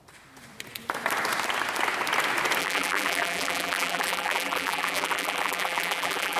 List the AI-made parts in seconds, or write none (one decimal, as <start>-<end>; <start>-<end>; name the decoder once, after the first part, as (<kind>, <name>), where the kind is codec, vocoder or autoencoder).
2.6-6.4 (vocoder, BigVGAN v2)